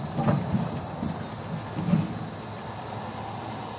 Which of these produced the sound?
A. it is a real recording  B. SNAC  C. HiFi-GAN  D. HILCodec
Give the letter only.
A